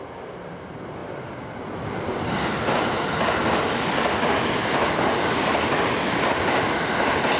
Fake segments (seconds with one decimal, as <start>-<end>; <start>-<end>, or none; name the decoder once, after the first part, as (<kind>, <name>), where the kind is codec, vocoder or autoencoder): none